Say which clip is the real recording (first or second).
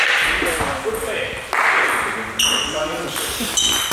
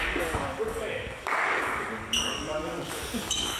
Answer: first